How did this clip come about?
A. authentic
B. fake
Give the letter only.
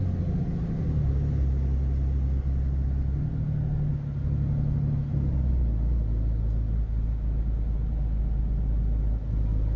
A